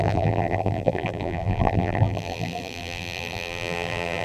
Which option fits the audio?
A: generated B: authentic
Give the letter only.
A